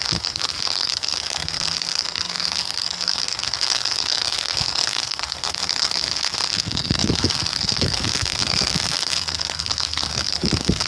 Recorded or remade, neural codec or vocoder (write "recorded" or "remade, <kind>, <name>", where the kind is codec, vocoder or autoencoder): remade, codec, SNAC